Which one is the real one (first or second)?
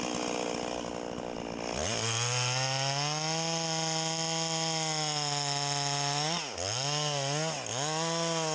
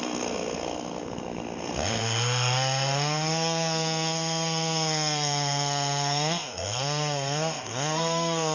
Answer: first